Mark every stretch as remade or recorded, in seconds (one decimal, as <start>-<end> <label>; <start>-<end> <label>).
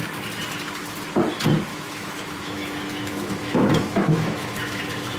0.0-1.7 recorded; 1.7-4.8 remade; 4.8-5.2 recorded